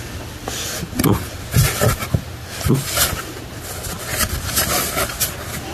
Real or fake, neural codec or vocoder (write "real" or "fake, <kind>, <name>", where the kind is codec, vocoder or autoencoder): real